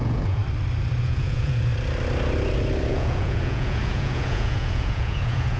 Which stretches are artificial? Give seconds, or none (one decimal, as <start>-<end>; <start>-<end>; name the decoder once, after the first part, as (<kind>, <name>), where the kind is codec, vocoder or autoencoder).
0.0-0.4 (vocoder, Vocos); 1.0-1.7; 2.9-5.6